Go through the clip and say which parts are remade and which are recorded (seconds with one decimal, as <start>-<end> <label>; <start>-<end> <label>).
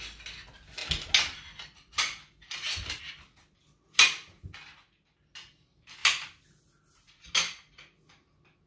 0.0-8.7 recorded